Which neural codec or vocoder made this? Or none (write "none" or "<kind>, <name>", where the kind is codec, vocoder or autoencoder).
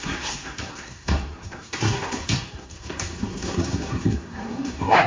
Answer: codec, SNAC